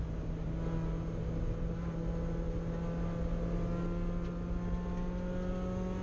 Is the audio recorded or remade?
recorded